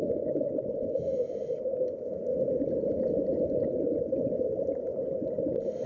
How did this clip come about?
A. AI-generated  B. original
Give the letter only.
B